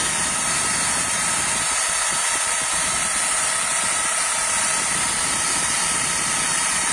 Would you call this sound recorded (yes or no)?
yes